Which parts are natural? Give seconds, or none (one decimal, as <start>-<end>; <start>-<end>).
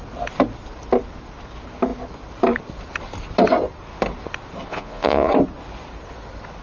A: 0.0-4.7; 5.3-6.6